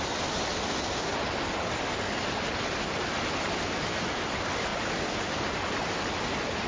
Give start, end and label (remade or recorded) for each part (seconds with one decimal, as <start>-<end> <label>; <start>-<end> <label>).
0.0-6.7 recorded